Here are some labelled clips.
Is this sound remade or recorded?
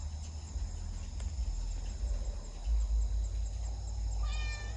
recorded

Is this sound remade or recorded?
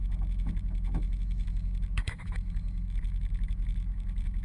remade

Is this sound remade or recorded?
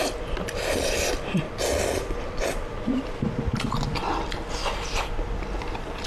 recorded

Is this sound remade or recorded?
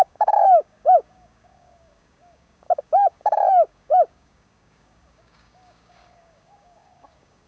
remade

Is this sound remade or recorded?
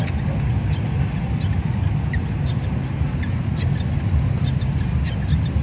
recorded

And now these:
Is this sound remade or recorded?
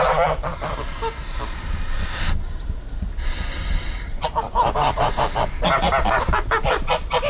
recorded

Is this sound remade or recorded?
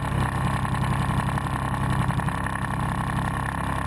recorded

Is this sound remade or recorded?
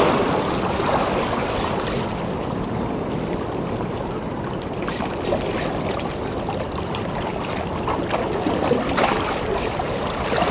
recorded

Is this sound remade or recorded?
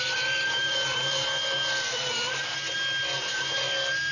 recorded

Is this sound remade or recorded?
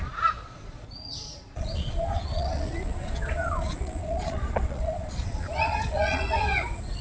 remade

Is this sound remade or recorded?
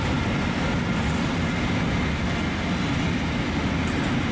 recorded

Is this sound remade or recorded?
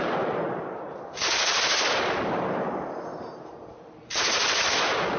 recorded